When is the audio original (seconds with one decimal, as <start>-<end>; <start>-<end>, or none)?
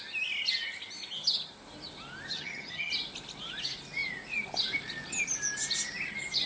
0.0-2.3; 2.9-6.5